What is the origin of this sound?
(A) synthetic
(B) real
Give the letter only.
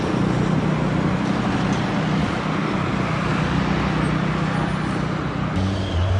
B